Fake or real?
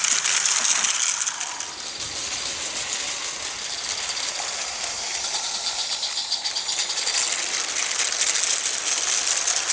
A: real